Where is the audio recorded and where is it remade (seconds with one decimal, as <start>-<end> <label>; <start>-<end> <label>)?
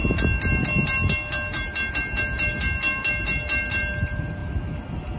0.0-5.2 recorded